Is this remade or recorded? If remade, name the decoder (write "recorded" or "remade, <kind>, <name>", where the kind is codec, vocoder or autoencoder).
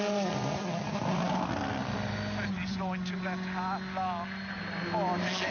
recorded